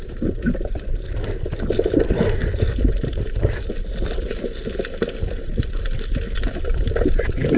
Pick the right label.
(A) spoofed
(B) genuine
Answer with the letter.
A